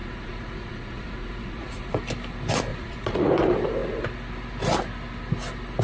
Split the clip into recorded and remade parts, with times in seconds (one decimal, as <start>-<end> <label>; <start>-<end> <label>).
0.0-1.9 remade; 1.9-2.7 recorded; 2.7-3.3 remade; 3.3-5.8 recorded